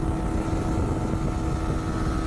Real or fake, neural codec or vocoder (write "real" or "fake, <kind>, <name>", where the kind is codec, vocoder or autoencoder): real